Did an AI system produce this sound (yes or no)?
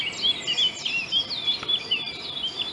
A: no